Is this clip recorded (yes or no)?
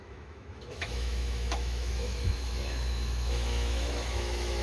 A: no